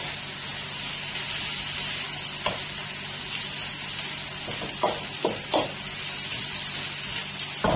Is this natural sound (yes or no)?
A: yes